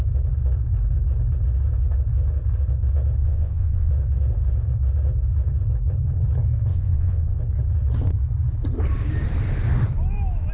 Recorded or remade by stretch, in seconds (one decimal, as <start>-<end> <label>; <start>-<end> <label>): 0.0-3.2 recorded; 3.2-3.9 remade; 3.9-6.7 recorded; 6.7-7.4 remade; 7.4-10.5 recorded